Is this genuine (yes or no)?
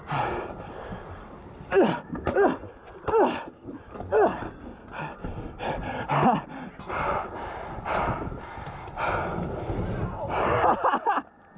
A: yes